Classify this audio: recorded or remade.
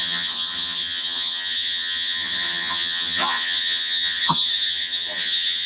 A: remade